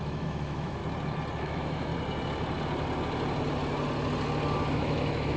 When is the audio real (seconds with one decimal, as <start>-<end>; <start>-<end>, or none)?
0.8-1.4; 1.9-4.7